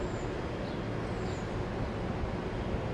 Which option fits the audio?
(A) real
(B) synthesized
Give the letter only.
A